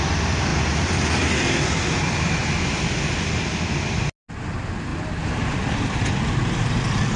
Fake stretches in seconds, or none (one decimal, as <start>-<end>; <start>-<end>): 0.5-4.0; 4.9-6.7